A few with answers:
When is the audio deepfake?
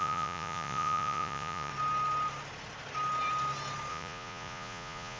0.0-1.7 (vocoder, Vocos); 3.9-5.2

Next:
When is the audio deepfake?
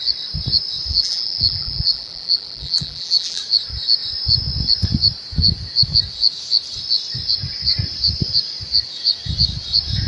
0.9-3.4 (vocoder, BigVGAN v2)